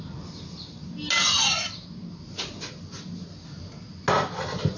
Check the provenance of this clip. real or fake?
real